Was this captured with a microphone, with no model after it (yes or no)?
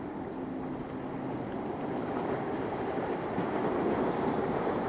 yes